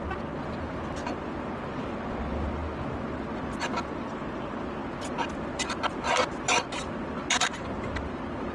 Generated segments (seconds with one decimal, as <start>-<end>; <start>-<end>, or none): none